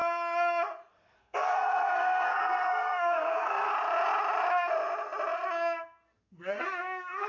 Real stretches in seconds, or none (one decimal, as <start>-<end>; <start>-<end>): 0.0-0.9; 3.7-5.8